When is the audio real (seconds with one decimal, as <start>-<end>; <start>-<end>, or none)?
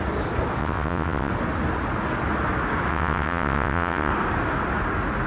0.0-0.6; 1.3-2.9; 4.1-5.3